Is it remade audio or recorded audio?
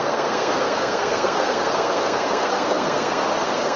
remade